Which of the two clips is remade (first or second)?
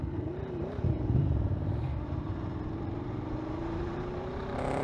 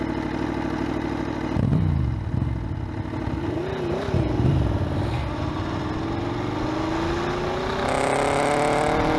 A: first